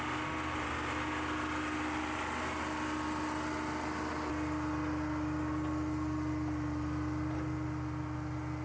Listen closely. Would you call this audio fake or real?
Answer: real